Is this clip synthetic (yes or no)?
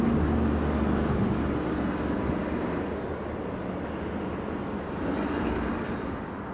no